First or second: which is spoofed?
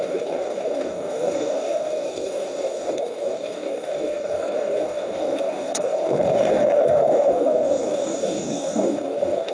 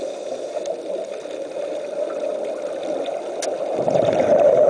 first